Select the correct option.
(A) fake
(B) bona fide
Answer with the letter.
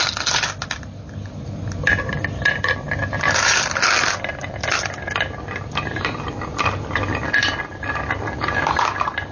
B